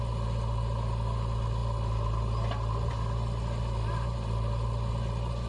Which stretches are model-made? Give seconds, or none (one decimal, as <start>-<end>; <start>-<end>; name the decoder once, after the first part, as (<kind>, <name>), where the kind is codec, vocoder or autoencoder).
none